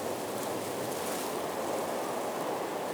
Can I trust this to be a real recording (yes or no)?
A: yes